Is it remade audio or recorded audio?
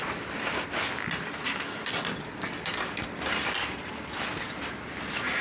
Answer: recorded